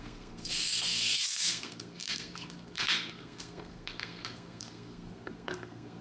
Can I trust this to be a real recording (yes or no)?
no